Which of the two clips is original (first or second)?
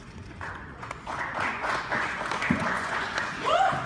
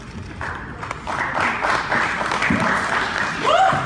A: second